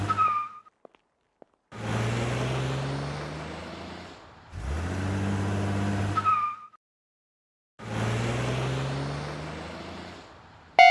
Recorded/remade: recorded